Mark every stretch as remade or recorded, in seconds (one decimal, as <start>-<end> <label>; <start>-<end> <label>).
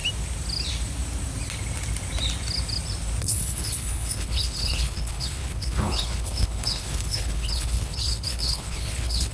0.0-3.2 recorded; 3.2-9.3 remade